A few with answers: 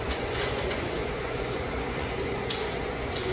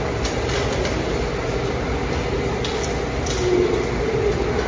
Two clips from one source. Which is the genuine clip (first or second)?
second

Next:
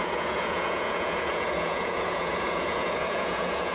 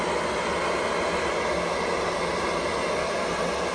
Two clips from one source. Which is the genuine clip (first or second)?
second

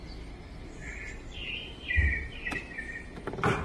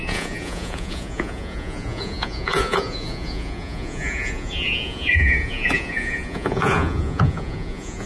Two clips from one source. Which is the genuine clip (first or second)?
first